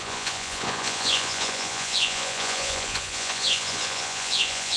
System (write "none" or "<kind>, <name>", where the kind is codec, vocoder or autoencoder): vocoder, Vocos